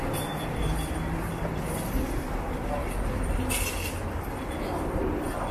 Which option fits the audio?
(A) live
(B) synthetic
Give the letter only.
A